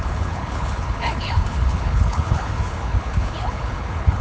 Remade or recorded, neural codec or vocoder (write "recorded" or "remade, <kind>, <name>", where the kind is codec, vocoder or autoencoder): remade, codec, HILCodec